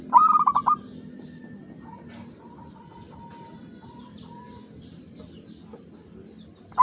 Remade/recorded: remade